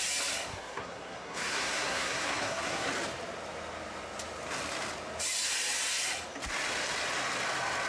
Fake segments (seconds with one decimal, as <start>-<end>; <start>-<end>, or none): 0.5-2.9